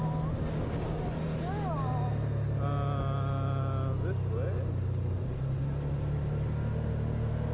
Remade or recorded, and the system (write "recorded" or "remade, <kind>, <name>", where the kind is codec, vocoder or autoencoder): recorded